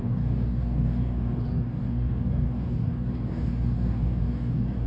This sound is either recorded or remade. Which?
remade